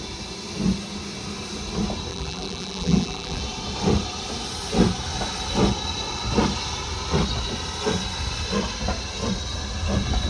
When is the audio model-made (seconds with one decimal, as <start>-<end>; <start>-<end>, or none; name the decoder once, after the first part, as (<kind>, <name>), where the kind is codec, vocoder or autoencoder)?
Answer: 2.1-3.4 (vocoder, BigVGAN v2)